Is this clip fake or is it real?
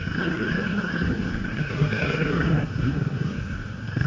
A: fake